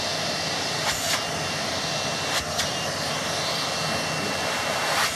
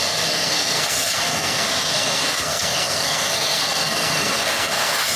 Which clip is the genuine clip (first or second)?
first